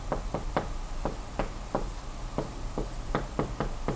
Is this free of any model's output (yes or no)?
yes